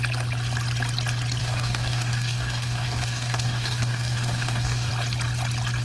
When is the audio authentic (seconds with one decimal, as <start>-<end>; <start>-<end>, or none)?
0.0-1.4; 4.9-5.8